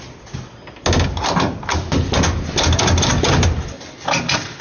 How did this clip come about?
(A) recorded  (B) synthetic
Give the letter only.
A